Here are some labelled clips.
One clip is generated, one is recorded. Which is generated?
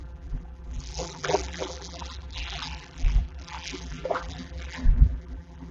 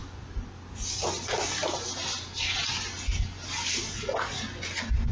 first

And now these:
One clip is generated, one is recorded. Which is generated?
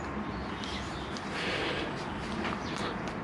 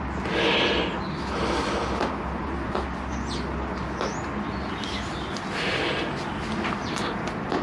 first